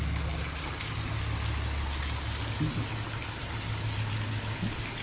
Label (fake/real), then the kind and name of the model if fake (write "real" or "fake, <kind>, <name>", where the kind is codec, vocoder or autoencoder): real